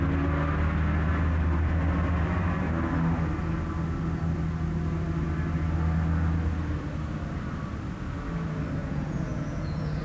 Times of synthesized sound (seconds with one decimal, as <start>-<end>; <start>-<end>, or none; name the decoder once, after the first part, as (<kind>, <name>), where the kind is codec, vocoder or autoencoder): 8.8-10.0 (vocoder, Vocos)